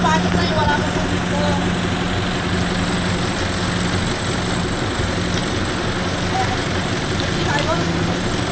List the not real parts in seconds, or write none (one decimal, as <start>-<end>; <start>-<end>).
none